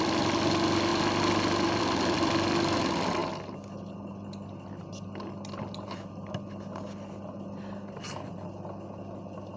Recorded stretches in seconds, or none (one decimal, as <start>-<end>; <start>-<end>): 0.0-9.6